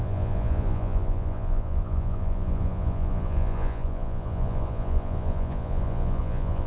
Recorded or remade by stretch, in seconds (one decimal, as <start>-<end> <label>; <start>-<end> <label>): 0.0-6.7 remade

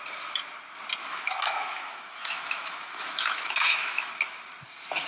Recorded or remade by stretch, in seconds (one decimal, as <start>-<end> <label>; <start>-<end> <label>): 0.0-1.0 recorded; 1.0-4.1 remade; 4.1-5.1 recorded

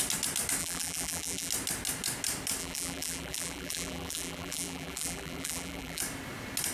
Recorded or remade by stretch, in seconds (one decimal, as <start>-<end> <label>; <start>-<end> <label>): 0.0-0.6 recorded; 0.6-1.5 remade; 1.5-2.6 recorded; 2.6-6.0 remade; 6.0-6.7 recorded

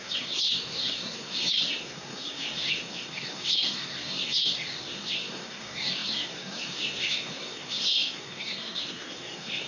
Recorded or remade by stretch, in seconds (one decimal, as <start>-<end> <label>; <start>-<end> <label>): 0.0-9.7 remade

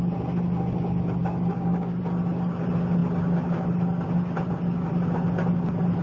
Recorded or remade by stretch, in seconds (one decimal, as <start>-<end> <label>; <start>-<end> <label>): 0.0-1.2 recorded; 1.2-2.0 remade; 2.0-6.0 recorded

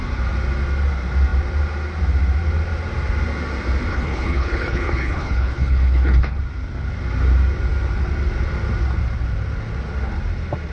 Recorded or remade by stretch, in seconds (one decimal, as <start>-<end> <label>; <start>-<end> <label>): 0.0-3.9 recorded; 3.9-6.4 remade; 6.4-10.7 recorded